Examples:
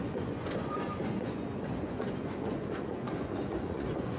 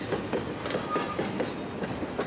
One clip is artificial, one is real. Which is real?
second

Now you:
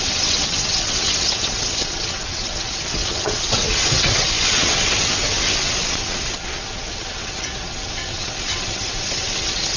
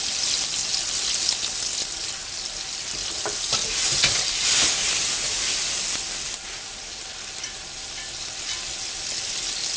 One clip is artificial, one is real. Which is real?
second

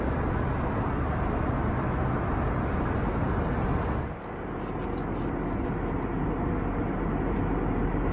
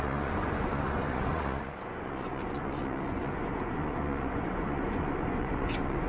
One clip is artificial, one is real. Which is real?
first